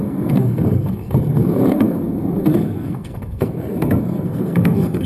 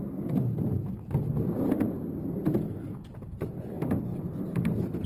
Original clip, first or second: second